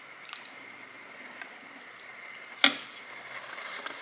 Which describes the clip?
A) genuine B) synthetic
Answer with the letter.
A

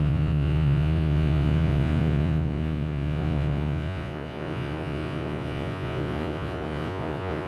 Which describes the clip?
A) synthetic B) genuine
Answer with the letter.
A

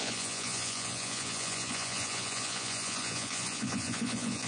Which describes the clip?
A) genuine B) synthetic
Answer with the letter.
B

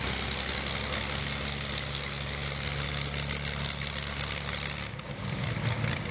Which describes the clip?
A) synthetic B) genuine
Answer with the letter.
B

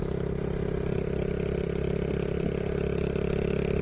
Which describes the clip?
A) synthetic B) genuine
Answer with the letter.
B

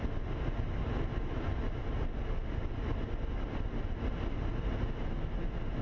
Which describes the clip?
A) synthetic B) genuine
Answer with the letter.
B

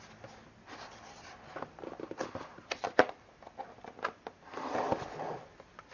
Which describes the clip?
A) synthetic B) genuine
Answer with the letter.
B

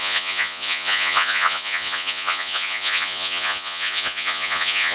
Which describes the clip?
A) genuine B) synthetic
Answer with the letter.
B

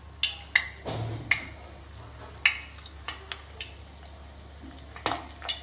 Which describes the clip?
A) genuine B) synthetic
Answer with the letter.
A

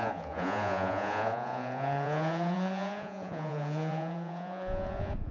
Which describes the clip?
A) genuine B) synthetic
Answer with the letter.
B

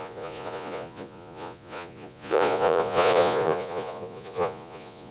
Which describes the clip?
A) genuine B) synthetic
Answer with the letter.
B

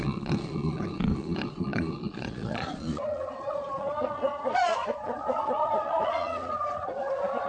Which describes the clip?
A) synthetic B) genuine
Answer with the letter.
A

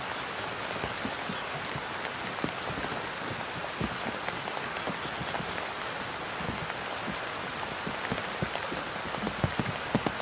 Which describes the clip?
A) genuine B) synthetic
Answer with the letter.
A